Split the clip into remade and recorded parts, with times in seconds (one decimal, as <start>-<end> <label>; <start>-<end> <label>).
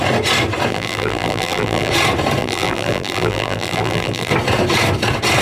0.0-0.7 recorded; 0.7-1.9 remade; 1.9-2.4 recorded; 2.4-4.3 remade; 4.3-5.4 recorded